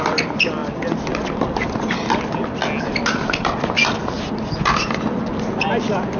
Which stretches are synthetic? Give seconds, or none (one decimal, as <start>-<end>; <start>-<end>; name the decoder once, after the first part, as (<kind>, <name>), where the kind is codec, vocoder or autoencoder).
none